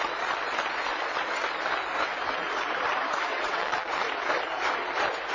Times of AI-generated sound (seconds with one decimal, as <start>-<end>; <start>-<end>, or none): 0.9-1.5; 3.3-4.0